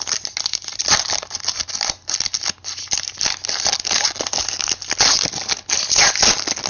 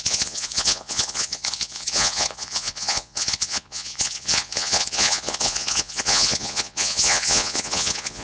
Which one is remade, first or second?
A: second